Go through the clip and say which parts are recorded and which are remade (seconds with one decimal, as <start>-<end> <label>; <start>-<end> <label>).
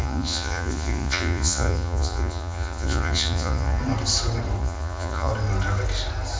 0.0-3.8 remade; 3.8-4.6 recorded; 4.6-5.3 remade; 5.3-6.4 recorded